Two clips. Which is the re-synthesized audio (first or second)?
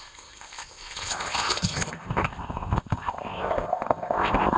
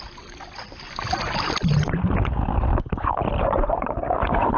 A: first